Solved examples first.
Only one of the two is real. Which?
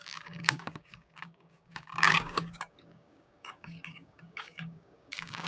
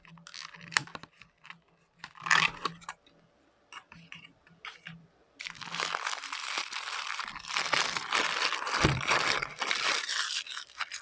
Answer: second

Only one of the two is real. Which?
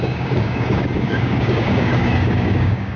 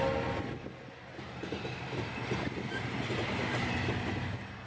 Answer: second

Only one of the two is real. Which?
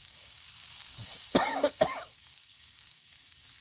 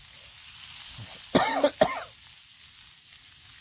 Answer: second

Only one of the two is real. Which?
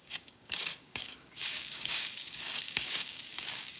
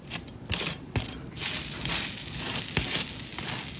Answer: second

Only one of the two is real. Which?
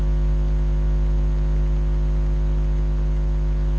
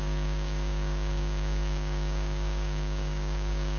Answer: first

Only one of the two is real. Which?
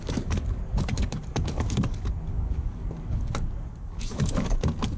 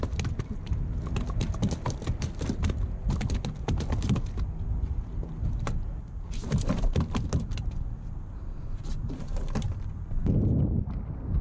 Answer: second